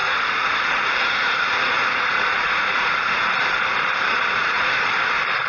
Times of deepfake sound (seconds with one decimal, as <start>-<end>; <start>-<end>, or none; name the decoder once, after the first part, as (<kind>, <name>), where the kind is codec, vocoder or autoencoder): 0.0-3.3 (vocoder, Vocos); 4.1-4.9